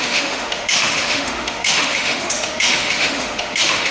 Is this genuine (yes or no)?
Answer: no